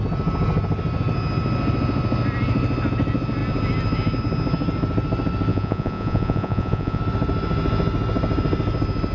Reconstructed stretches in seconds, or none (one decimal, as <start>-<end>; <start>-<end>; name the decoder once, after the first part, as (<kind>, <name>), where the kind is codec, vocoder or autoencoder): 5.5-7.0 (vocoder, Vocos)